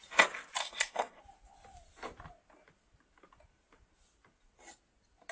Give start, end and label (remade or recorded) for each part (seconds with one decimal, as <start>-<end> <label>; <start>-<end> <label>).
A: 0.0-0.6 recorded; 0.6-1.2 remade; 1.2-5.3 recorded